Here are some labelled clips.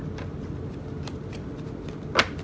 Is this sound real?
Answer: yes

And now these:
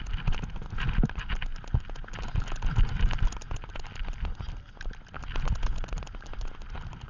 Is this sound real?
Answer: yes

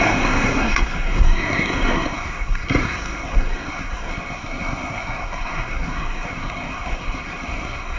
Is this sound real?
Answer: no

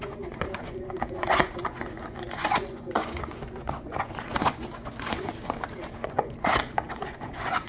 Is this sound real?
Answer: no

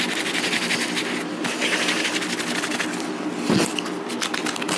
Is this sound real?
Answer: yes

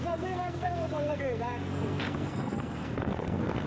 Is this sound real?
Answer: no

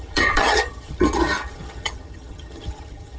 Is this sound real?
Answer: no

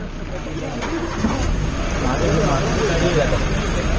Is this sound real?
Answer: yes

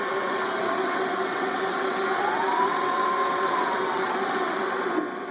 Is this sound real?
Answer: no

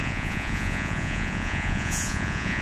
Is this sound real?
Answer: no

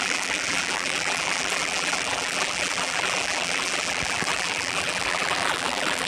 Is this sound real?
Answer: no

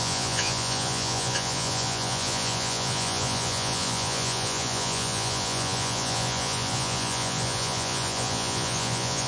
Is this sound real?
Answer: no